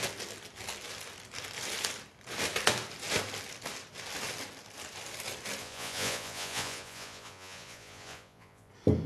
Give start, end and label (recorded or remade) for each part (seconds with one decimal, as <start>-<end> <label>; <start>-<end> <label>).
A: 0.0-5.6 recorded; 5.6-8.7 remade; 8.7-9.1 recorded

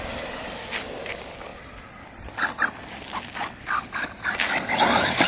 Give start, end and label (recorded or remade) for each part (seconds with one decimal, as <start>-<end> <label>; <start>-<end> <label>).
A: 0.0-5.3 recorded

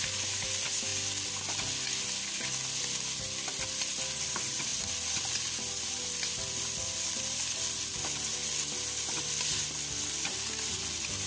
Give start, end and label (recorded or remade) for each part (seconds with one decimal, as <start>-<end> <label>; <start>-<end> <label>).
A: 0.0-0.9 recorded; 0.9-1.4 remade; 1.4-4.7 recorded; 4.7-8.0 remade; 8.0-11.3 recorded

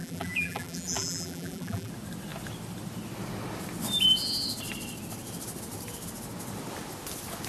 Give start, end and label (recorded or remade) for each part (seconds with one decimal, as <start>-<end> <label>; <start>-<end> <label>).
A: 0.0-1.9 remade; 1.9-7.5 recorded

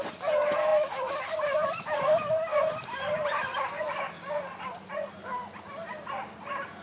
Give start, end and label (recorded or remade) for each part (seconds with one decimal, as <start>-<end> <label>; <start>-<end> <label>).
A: 0.0-6.8 recorded